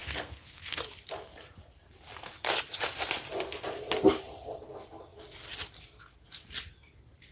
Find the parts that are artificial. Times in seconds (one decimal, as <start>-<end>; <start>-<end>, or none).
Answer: 0.0-0.8